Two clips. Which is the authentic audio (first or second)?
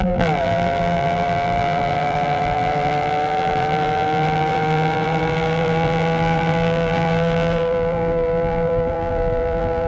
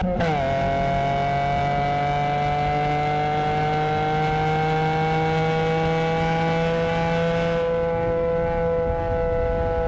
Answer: second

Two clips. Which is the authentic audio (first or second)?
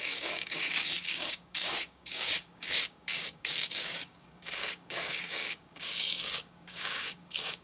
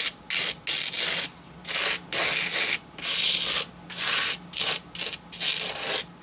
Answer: second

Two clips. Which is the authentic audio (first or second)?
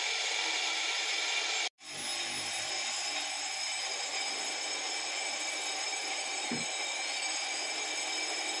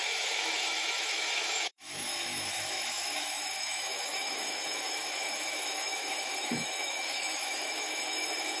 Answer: first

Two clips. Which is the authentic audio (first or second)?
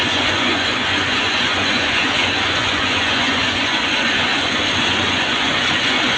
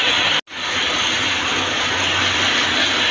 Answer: second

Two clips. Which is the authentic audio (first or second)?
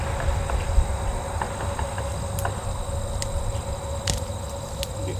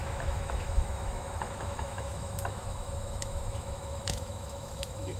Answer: first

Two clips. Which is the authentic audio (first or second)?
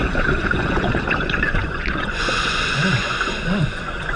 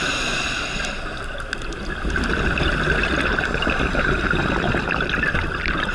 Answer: second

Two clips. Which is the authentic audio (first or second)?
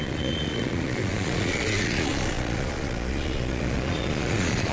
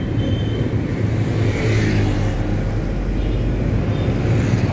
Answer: second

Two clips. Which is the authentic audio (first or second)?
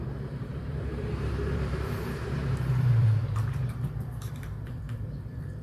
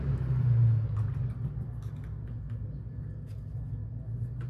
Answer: second